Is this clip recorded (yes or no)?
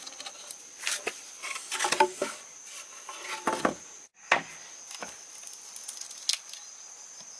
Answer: yes